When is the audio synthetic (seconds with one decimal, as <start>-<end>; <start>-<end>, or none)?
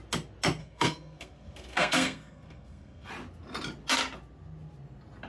0.6-3.1